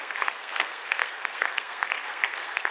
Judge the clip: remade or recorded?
remade